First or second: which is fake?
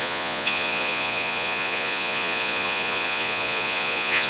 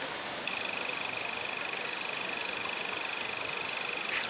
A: first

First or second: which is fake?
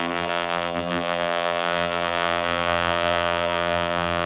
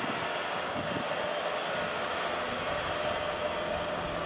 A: first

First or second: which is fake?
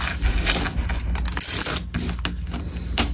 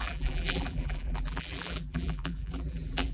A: second